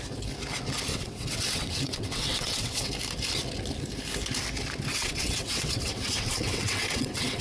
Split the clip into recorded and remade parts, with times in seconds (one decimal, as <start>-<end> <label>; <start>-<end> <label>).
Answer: 0.0-0.9 recorded; 0.9-2.9 remade; 2.9-4.9 recorded; 4.9-7.4 remade